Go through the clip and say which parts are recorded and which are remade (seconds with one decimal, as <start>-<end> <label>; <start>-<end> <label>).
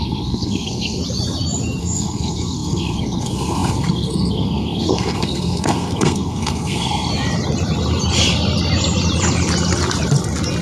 0.0-1.0 remade; 1.0-1.8 recorded; 1.8-7.1 remade; 7.1-10.6 recorded